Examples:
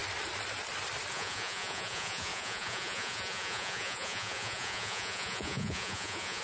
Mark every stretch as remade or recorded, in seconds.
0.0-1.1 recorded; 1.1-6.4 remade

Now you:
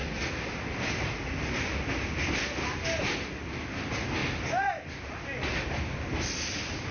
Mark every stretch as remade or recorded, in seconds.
0.0-6.9 recorded

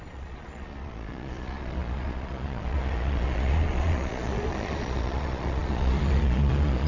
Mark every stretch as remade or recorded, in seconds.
0.0-6.9 remade

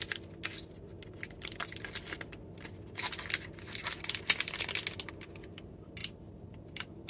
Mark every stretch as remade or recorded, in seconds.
0.0-7.1 recorded

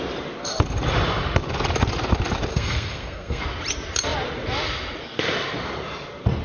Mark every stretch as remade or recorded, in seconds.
0.0-2.5 recorded; 2.5-3.4 remade; 3.4-6.4 recorded

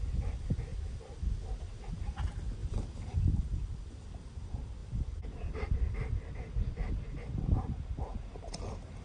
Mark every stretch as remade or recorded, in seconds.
0.0-0.7 recorded; 0.7-1.6 remade; 1.6-4.8 recorded; 4.8-7.5 remade; 7.5-9.0 recorded

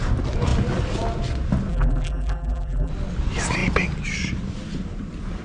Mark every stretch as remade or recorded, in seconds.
0.0-1.7 recorded; 1.7-2.9 remade; 2.9-5.4 recorded